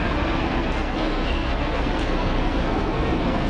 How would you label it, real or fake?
fake